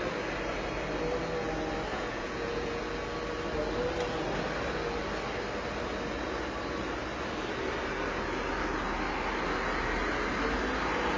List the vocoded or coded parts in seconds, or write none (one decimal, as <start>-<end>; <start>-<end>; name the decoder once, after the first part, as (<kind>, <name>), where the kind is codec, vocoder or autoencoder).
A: 1.9-2.8 (vocoder, Vocos)